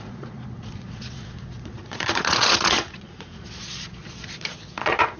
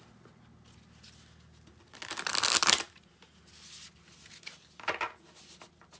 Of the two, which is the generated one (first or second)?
first